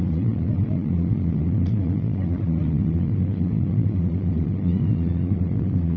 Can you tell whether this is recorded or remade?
remade